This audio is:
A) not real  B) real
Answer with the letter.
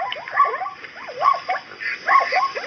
B